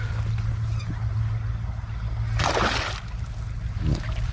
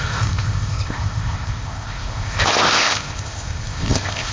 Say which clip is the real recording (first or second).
first